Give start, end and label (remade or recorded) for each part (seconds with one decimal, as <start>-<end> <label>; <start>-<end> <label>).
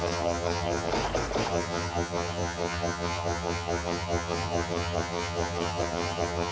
0.0-0.9 remade; 0.9-1.5 recorded; 1.5-6.5 remade